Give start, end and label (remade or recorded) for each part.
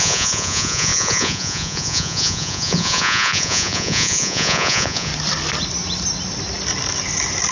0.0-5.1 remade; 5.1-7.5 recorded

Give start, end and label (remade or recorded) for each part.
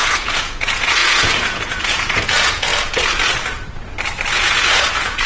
0.0-2.7 remade; 2.7-4.3 recorded; 4.3-5.3 remade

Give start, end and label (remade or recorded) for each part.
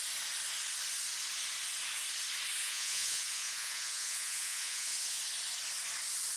0.0-2.6 recorded; 2.6-5.2 remade; 5.2-6.4 recorded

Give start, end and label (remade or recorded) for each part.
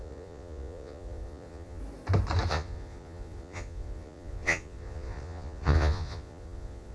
0.0-1.8 remade; 1.8-2.5 recorded; 2.5-6.9 remade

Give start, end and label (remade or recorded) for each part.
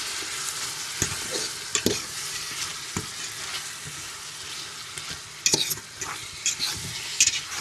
0.0-7.6 recorded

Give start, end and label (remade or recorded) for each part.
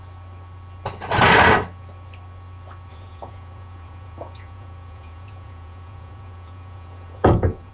0.0-2.9 recorded; 2.9-7.7 remade